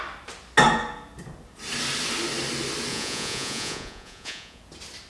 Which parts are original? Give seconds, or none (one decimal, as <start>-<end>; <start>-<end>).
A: 0.0-2.9; 4.6-5.1